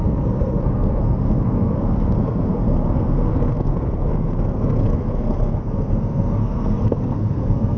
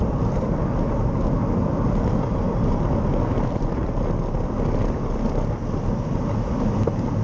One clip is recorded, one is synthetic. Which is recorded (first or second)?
second